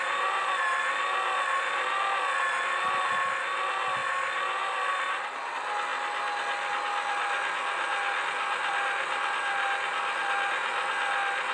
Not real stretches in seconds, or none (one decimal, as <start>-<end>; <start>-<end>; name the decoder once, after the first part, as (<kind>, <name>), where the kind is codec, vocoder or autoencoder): none